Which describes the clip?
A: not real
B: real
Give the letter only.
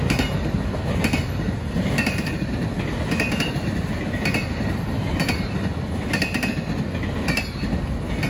B